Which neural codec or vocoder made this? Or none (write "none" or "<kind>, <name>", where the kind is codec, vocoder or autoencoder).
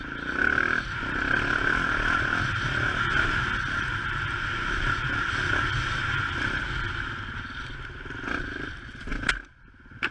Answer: none